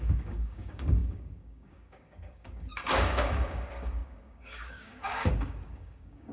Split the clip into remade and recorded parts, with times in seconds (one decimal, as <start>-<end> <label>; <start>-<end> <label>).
0.0-6.3 remade